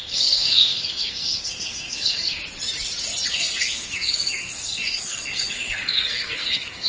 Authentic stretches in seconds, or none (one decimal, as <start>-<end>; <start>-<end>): 2.4-3.3